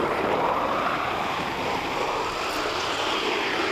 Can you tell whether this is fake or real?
fake